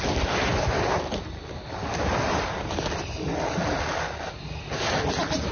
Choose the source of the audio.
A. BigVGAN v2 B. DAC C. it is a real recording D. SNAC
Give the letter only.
C